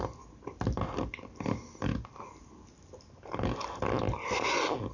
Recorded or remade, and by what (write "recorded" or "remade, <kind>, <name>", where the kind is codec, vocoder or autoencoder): recorded